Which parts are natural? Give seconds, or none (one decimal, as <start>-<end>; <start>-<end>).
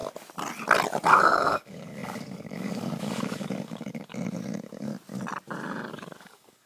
0.0-1.1; 4.9-5.9